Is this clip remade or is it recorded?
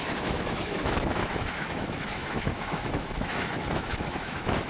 remade